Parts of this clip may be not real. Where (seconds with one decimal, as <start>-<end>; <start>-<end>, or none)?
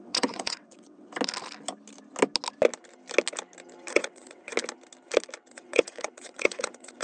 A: 0.0-1.1; 3.9-4.5; 5.5-7.0